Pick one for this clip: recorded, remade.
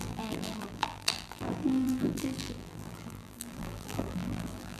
remade